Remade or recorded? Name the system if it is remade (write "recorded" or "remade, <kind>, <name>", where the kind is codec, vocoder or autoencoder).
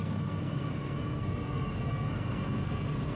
remade, codec, SNAC